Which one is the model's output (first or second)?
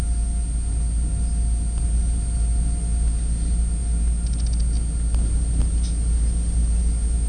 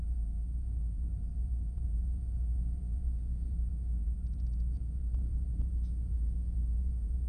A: second